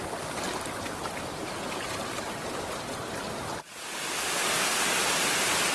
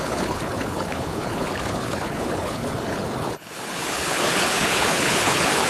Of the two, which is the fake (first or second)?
second